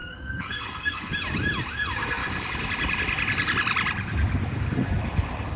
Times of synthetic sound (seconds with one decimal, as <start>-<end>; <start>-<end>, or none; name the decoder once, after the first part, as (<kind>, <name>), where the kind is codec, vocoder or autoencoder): 0.0-1.1 (codec, SNAC)